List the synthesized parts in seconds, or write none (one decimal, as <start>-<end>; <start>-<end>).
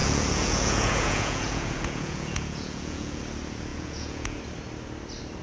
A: 0.0-3.2; 3.7-4.4